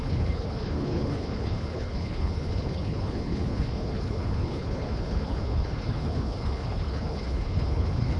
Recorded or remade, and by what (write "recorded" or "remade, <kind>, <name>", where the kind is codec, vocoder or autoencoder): remade, codec, HILCodec